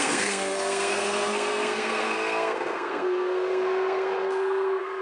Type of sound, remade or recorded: remade